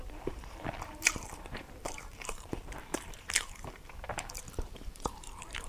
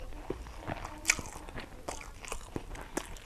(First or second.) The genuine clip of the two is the second